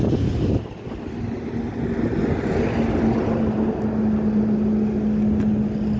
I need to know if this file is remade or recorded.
recorded